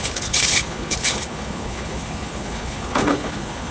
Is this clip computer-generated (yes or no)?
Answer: yes